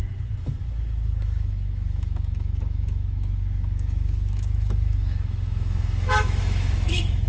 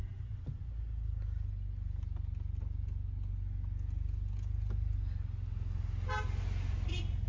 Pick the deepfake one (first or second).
first